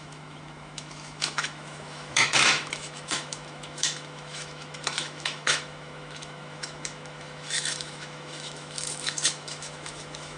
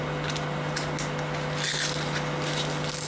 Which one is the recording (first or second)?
second